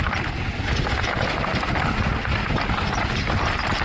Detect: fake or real real